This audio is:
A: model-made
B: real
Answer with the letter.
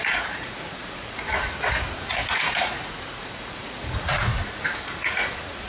A